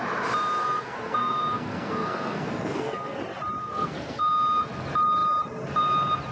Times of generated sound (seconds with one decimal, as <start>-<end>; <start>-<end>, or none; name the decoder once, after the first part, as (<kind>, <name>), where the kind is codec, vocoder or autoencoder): 0.6-3.2 (codec, SNAC); 3.6-4.2